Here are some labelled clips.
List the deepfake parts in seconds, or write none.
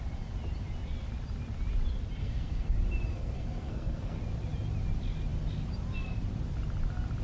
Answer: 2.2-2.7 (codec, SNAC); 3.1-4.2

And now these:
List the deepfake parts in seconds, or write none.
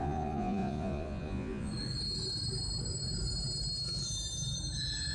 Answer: 0.0-1.7 (vocoder, Vocos)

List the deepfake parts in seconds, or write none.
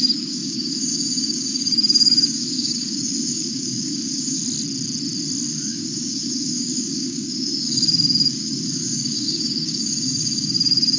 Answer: 0.0-4.4 (codec, DAC); 5.5-11.0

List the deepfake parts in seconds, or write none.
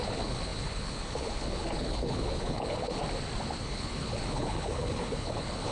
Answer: 0.0-3.0 (codec, HILCodec); 3.6-5.7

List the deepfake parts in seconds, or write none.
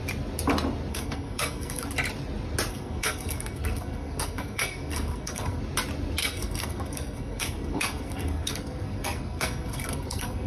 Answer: 0.9-1.9 (codec, SNAC); 2.7-5.6; 6.2-10.5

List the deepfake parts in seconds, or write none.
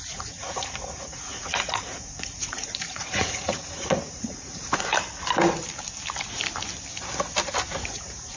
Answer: 0.0-4.9 (vocoder, Vocos); 7.9-8.4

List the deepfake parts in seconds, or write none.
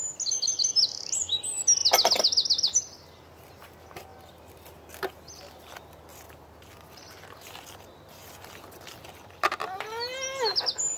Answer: none